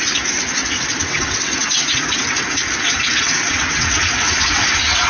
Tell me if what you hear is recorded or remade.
remade